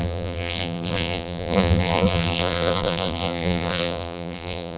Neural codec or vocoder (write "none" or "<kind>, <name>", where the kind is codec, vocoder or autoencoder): vocoder, BigVGAN v2